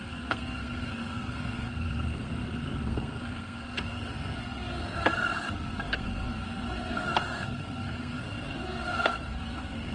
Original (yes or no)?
no